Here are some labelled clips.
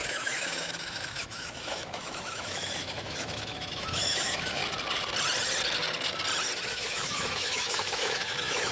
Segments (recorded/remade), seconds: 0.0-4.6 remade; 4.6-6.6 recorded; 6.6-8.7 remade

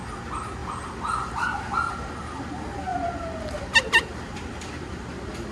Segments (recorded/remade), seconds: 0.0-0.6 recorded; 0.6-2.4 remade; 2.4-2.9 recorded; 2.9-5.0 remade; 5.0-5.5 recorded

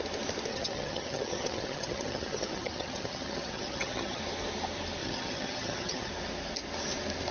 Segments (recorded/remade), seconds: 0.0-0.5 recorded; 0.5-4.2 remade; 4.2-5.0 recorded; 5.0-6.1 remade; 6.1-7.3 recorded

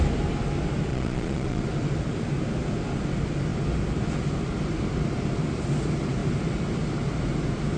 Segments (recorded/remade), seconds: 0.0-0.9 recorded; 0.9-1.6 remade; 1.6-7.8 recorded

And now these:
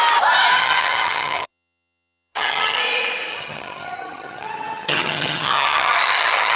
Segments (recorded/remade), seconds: 0.0-0.6 recorded; 0.6-2.8 remade; 2.8-3.3 recorded; 3.3-6.6 remade

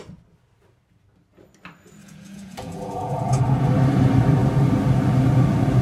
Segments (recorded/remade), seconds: 0.0-2.0 recorded; 2.0-3.4 remade; 3.4-5.8 recorded

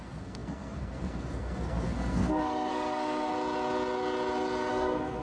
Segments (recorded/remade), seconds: 0.0-3.3 remade; 3.3-4.7 recorded; 4.7-5.2 remade

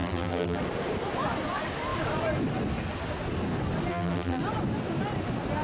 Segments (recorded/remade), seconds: 0.0-0.6 remade; 0.6-3.9 recorded; 3.9-4.4 remade; 4.4-5.6 recorded